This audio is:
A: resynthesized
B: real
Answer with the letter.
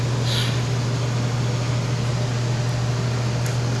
B